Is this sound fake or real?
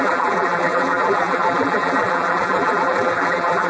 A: fake